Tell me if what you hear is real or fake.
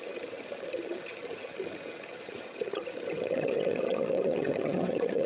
fake